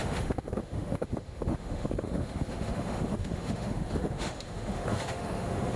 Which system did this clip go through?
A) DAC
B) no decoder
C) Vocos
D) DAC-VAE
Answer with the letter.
D